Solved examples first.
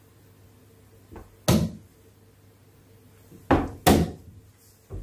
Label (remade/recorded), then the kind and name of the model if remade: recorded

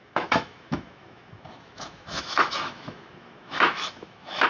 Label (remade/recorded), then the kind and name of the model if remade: remade, autoencoder, DAC-VAE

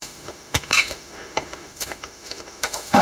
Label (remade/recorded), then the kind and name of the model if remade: remade, autoencoder, DAC-VAE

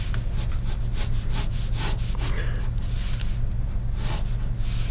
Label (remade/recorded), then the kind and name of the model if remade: recorded